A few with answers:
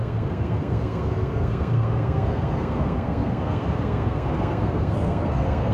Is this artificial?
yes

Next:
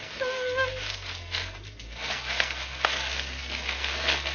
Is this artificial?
yes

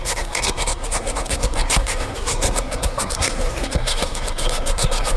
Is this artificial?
yes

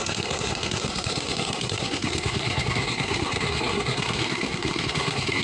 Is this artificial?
yes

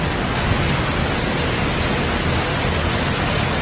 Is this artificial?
no